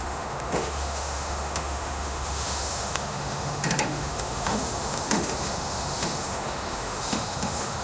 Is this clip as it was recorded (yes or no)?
no